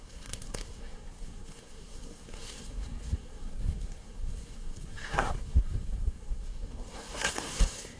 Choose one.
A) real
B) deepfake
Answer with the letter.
B